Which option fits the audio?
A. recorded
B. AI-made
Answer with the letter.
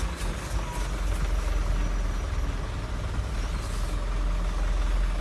A